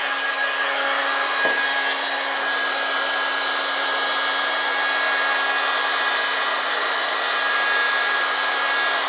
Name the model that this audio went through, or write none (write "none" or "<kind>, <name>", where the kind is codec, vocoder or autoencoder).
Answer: none